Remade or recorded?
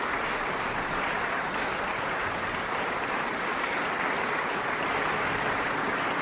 recorded